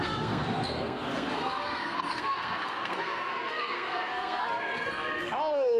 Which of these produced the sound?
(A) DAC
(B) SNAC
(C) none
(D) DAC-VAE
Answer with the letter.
B